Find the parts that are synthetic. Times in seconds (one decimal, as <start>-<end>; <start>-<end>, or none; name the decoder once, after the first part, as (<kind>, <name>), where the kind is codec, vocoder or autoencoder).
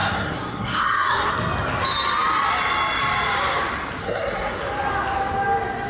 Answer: 0.0-1.3 (codec, SNAC); 4.0-4.6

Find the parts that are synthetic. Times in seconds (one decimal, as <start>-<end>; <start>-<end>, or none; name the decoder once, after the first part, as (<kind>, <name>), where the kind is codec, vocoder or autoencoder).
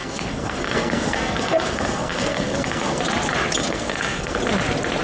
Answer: 0.0-3.0 (codec, SNAC); 3.6-4.4